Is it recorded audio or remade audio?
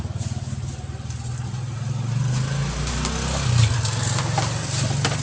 recorded